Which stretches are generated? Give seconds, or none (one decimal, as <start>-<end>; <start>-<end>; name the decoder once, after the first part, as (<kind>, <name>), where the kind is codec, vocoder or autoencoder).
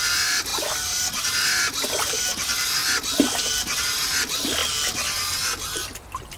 0.0-2.8 (vocoder, BigVGAN v2); 3.8-4.6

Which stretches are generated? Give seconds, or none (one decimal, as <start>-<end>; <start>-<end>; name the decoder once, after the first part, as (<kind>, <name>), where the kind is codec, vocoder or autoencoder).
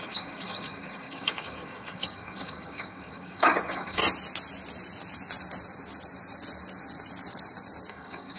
0.0-4.0 (codec, DAC); 7.9-8.4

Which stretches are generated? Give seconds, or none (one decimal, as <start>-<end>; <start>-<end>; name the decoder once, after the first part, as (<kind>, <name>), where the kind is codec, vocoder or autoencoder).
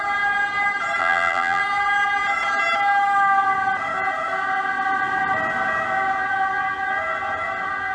1.0-1.6 (vocoder, BigVGAN v2)